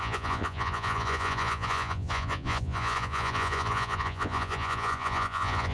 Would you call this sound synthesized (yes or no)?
yes